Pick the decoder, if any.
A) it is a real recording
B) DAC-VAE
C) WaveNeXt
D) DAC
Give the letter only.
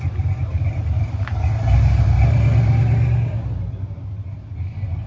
A